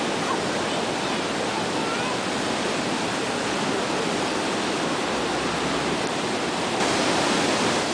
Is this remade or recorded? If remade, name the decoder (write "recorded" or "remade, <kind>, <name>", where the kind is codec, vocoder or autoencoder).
recorded